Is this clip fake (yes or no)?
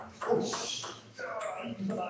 yes